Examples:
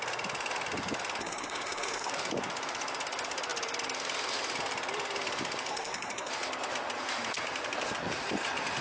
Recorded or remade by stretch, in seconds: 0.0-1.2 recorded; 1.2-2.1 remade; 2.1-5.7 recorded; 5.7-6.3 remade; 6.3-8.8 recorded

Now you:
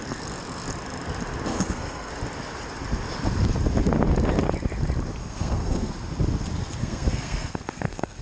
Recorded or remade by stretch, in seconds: 0.0-1.5 recorded; 1.5-2.1 remade; 2.1-5.2 recorded; 5.2-5.9 remade; 5.9-6.8 recorded; 6.8-8.2 remade